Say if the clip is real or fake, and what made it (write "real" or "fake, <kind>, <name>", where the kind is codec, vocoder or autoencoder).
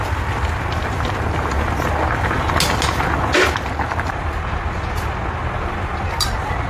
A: real